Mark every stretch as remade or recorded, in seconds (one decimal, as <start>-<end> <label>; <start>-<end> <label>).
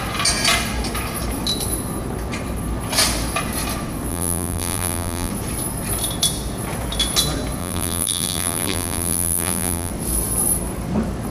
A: 0.0-4.1 recorded; 4.1-5.3 remade; 5.3-7.6 recorded; 7.6-9.9 remade; 9.9-11.3 recorded